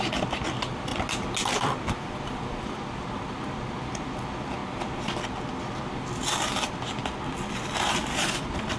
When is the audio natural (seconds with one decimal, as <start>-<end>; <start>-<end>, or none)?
0.9-1.5; 4.6-5.6; 7.0-7.9